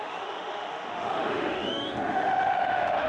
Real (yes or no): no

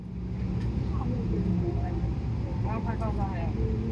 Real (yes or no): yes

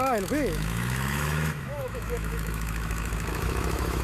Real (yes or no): no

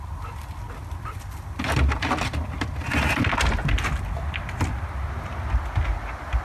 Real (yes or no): yes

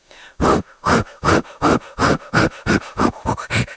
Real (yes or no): no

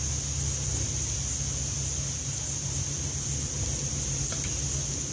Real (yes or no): yes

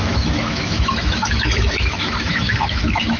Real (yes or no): no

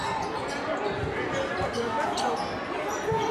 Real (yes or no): yes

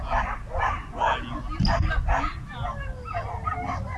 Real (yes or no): yes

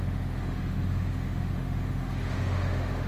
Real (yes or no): no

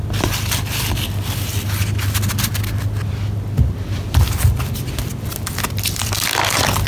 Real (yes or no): yes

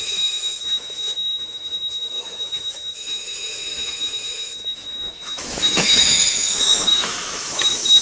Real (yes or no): no